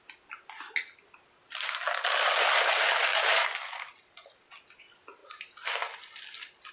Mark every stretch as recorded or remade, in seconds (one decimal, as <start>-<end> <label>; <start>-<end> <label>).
0.0-3.1 recorded; 3.1-4.8 remade; 4.8-5.2 recorded; 5.2-6.0 remade; 6.0-6.7 recorded

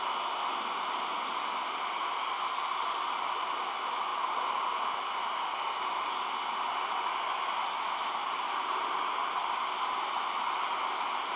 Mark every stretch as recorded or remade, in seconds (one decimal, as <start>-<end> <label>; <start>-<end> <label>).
0.0-11.4 recorded

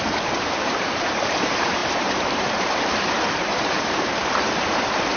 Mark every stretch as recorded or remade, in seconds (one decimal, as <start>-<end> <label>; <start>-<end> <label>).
0.0-5.2 remade

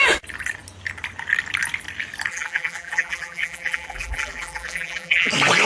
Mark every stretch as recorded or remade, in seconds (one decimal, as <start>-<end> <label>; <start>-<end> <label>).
0.0-2.3 recorded; 2.3-5.3 remade; 5.3-5.7 recorded